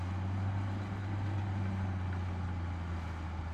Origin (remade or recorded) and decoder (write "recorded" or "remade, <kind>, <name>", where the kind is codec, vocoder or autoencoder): recorded